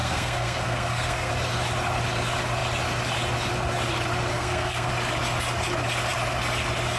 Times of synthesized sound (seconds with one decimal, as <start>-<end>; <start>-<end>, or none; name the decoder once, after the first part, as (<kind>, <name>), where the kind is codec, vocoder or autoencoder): 0.0-1.3 (codec, SNAC); 4.3-4.9